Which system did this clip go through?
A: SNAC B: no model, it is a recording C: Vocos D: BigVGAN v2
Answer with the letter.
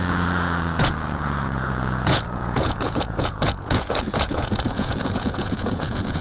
C